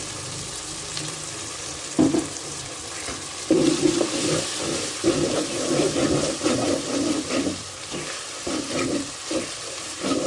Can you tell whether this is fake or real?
fake